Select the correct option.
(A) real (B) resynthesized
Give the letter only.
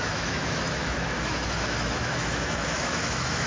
B